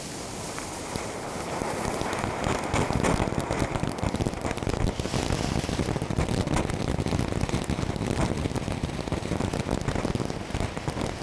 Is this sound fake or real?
real